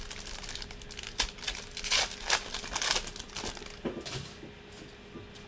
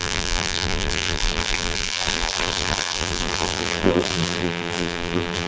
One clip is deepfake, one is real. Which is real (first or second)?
first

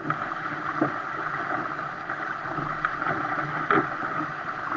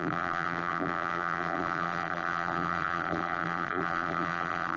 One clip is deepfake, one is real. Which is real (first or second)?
first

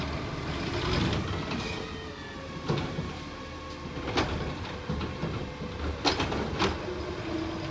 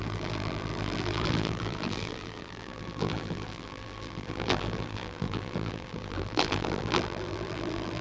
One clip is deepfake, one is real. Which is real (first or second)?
first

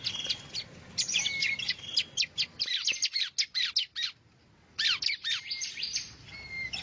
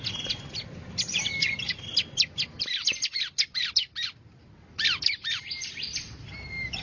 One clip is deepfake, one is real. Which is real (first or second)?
first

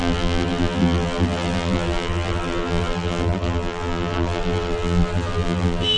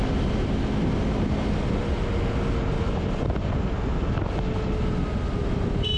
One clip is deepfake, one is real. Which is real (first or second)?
second